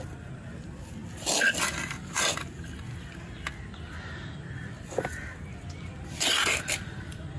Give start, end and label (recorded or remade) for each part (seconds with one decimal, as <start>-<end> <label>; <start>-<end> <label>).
0.0-7.4 recorded